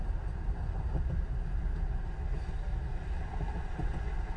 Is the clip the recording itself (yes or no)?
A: yes